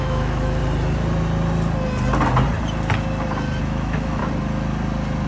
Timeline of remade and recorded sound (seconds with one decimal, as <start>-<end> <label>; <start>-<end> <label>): 0.0-0.6 remade; 0.6-3.6 recorded; 3.6-4.2 remade; 4.2-5.3 recorded